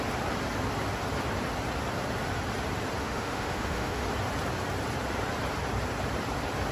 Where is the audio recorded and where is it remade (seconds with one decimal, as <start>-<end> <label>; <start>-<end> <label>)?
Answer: 0.0-3.0 recorded; 3.0-4.0 remade; 4.0-6.7 recorded